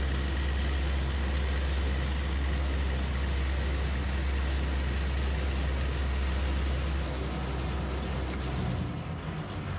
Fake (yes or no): no